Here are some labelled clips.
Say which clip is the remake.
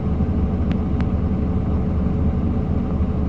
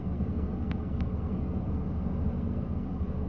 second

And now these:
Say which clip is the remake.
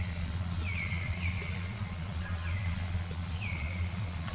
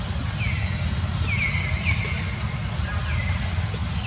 first